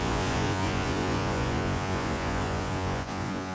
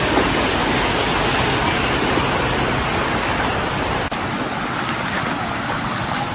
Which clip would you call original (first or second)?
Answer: second